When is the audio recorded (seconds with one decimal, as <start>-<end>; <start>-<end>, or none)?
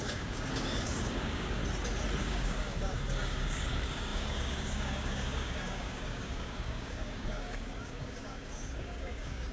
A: 1.6-2.2